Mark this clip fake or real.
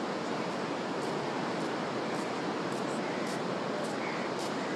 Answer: real